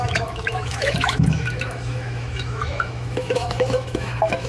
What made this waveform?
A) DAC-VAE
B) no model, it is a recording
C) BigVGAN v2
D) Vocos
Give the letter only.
A